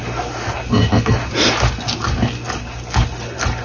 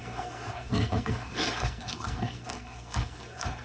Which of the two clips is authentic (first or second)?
first